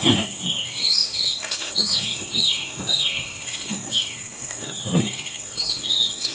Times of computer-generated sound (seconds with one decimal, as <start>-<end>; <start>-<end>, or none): 0.0-6.3